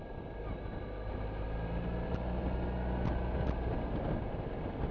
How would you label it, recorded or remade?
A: recorded